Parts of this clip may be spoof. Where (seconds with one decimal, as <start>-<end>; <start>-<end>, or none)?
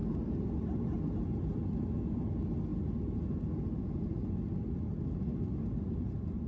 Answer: none